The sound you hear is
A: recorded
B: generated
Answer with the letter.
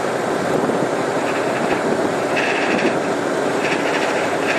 B